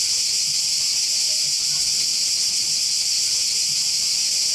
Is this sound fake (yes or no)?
no